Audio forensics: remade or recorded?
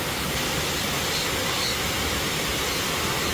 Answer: remade